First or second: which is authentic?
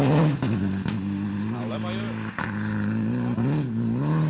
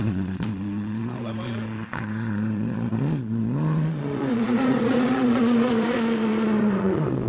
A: first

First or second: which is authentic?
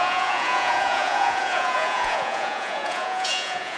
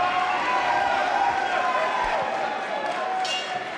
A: second